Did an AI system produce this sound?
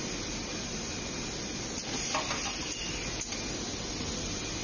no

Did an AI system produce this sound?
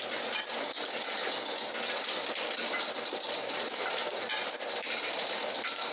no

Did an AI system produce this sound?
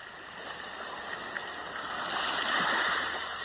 no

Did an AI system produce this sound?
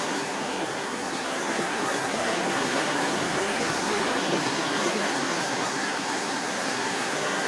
yes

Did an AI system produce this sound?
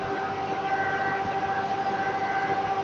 no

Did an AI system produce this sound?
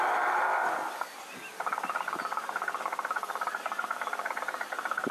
no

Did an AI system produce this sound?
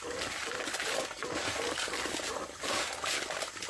no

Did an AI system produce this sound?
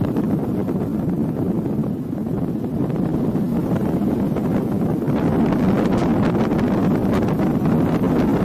no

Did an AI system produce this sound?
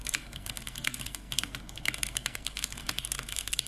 yes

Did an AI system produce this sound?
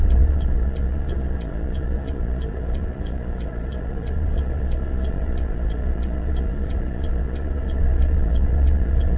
yes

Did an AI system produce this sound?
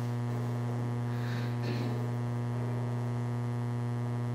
no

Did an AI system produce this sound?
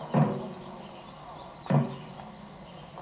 no